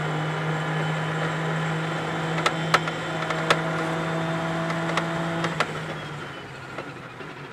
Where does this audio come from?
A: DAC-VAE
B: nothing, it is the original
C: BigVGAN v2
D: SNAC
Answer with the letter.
B